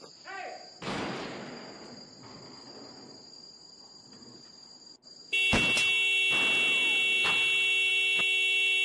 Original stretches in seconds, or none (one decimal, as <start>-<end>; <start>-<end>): 0.0-8.8